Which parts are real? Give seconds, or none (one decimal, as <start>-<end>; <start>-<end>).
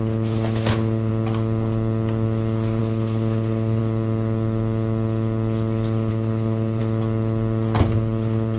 1.1-2.8; 3.8-6.1; 6.8-7.8